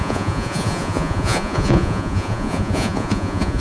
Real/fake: fake